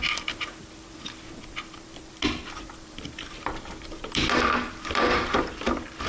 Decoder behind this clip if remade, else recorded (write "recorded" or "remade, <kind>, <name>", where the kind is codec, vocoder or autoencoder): remade, vocoder, BigVGAN v2